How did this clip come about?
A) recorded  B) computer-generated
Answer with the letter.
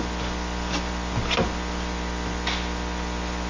A